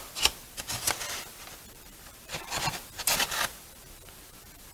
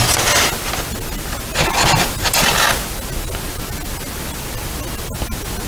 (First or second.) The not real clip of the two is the first